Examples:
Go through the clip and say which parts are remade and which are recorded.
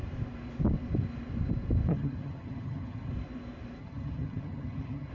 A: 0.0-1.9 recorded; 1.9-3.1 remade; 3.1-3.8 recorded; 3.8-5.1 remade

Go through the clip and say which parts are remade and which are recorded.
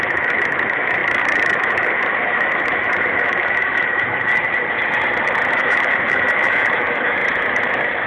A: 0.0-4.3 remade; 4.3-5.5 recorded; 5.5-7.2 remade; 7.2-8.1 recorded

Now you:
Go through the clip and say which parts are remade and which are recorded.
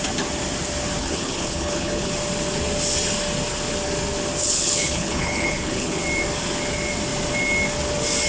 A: 0.0-1.0 recorded; 1.0-2.1 remade; 2.1-4.4 recorded; 4.4-6.0 remade; 6.0-8.3 recorded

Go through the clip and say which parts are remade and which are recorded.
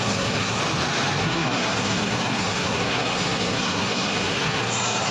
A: 0.0-0.6 remade; 0.6-1.2 recorded; 1.2-5.1 remade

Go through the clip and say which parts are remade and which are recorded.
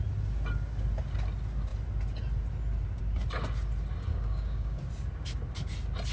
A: 0.0-4.1 recorded; 4.1-4.8 remade; 4.8-6.1 recorded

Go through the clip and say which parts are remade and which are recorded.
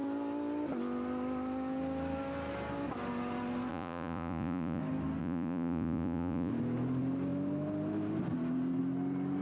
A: 0.0-3.7 recorded; 3.7-4.8 remade; 4.8-5.2 recorded; 5.2-6.5 remade; 6.5-9.4 recorded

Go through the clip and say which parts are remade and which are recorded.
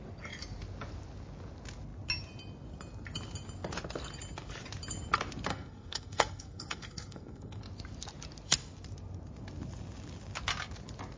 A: 0.0-5.5 recorded; 5.5-7.6 remade; 7.6-11.2 recorded